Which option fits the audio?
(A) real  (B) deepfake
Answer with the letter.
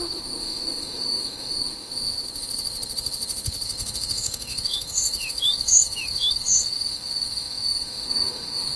B